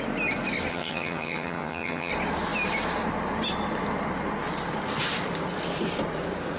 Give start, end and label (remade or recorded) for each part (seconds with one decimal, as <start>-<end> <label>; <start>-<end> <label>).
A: 0.0-0.7 recorded; 0.7-2.1 remade; 2.1-6.6 recorded